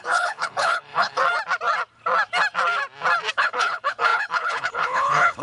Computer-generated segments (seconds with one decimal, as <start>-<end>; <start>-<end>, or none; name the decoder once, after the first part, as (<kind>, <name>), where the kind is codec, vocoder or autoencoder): 0.0-1.2 (codec, HILCodec); 3.3-5.4